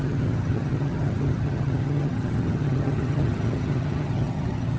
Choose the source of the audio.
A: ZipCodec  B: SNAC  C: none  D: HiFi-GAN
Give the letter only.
D